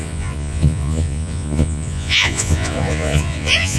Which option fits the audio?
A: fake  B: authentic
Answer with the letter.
A